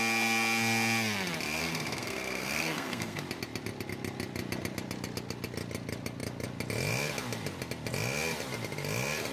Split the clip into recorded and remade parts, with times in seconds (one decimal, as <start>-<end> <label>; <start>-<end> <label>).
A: 0.0-1.6 recorded; 1.6-3.2 remade; 3.2-9.3 recorded